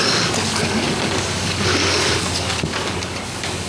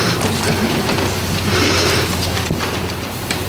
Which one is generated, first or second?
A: first